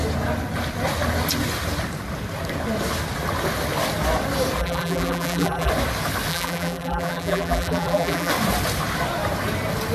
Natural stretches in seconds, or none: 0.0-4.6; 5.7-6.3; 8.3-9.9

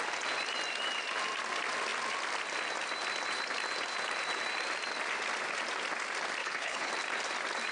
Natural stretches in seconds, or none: 0.0-6.4; 6.9-7.7

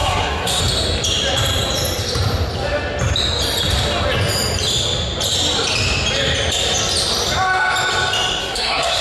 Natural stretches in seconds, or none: 0.6-8.4

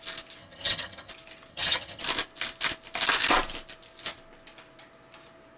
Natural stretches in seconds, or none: 0.0-0.4; 1.1-1.5; 2.0-5.6

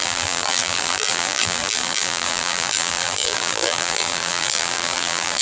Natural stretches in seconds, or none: none

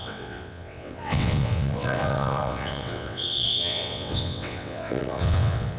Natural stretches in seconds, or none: none

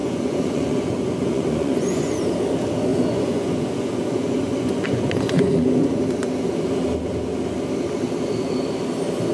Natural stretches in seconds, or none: 2.3-2.9; 6.0-9.3

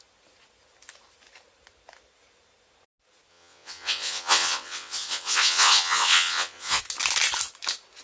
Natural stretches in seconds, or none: 0.0-3.3; 6.8-8.0